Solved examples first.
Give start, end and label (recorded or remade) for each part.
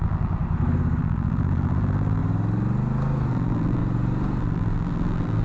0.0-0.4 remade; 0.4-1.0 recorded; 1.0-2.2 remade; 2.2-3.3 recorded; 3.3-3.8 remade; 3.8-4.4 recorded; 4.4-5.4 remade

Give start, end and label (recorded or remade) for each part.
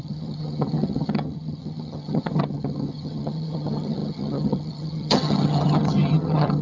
0.0-6.6 remade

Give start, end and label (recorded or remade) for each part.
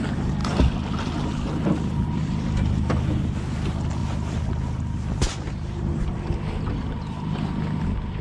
0.0-8.2 recorded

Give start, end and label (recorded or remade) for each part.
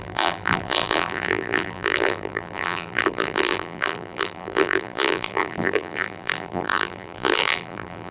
0.0-8.1 remade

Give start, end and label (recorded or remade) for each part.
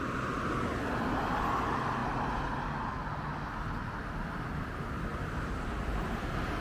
0.0-5.1 recorded; 5.1-6.6 remade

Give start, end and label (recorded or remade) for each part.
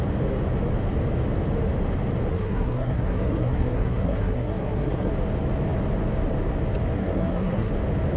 0.0-2.3 recorded; 2.3-5.1 remade; 5.1-7.0 recorded; 7.0-7.7 remade; 7.7-8.2 recorded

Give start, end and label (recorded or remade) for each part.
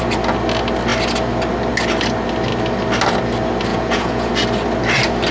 0.0-3.7 recorded; 3.7-4.3 remade; 4.3-5.3 recorded